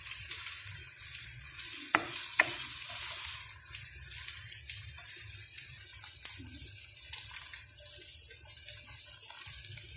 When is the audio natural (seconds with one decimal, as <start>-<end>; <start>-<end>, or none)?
0.0-0.8; 2.9-10.0